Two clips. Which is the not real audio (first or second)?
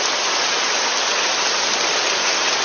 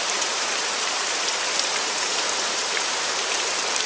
second